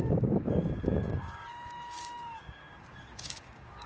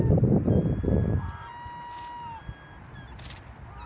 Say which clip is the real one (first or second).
second